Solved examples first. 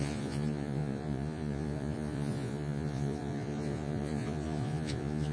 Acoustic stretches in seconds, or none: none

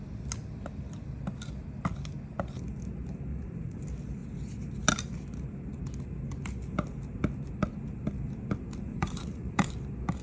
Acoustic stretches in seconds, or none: 0.0-3.3; 3.8-8.9; 9.7-10.2

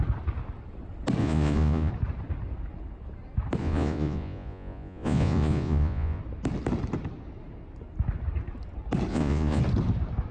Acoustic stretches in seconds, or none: 0.0-1.2; 1.9-3.6; 6.2-9.1; 9.6-10.3